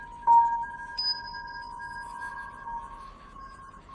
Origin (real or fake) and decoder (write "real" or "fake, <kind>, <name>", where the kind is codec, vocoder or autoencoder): fake, autoencoder, DAC-VAE